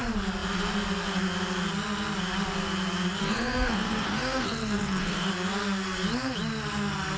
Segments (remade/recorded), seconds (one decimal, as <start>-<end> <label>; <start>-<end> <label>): 0.0-3.2 recorded; 3.2-5.3 remade; 5.3-7.2 recorded